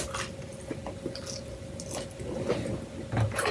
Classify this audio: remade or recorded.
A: recorded